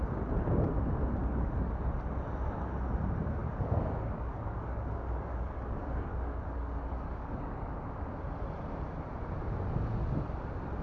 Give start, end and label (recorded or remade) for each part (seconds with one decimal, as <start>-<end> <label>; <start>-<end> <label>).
0.0-1.2 recorded; 1.2-1.7 remade; 1.7-3.4 recorded; 3.4-7.8 remade; 7.8-10.8 recorded